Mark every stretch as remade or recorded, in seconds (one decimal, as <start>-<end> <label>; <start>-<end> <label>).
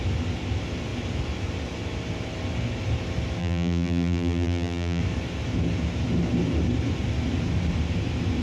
0.0-3.4 recorded; 3.4-5.0 remade; 5.0-8.4 recorded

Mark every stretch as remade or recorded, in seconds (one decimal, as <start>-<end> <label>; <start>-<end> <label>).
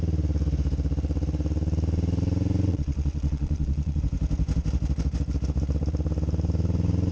0.0-2.7 recorded; 2.7-4.0 remade; 4.0-7.1 recorded